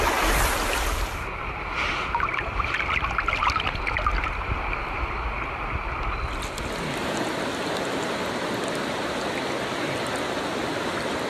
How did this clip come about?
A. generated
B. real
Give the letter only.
B